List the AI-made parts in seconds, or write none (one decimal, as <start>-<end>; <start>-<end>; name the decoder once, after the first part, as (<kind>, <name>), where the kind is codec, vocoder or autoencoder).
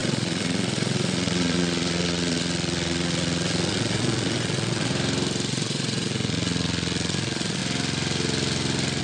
0.0-4.9 (vocoder, Vocos); 5.5-7.6